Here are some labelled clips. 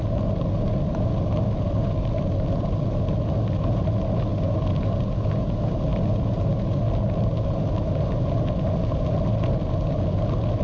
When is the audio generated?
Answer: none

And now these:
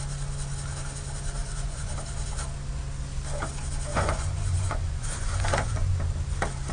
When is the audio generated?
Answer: 1.4-1.9 (vocoder, Vocos); 3.9-5.9

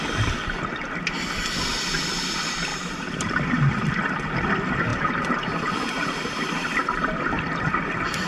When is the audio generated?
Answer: 2.7-3.8 (vocoder, BigVGAN v2); 4.9-7.4